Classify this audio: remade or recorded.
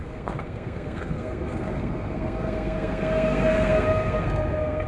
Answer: remade